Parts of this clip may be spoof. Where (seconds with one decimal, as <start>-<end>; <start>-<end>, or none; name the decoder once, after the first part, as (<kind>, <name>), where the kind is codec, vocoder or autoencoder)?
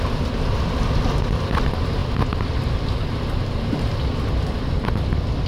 none